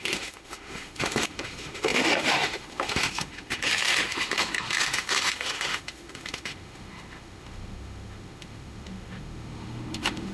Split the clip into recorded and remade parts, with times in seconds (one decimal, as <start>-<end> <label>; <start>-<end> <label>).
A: 0.0-10.3 remade